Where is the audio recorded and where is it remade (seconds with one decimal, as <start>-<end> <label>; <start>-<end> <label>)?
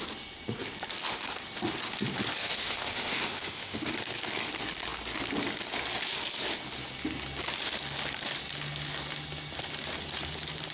0.0-2.4 recorded; 2.4-3.8 remade; 3.8-10.7 recorded